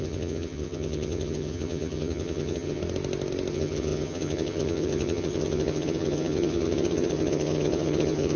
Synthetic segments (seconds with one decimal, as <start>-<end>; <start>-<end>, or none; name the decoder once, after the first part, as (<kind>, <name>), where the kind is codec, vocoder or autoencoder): 0.0-2.8 (vocoder, HiFi-GAN); 3.5-8.4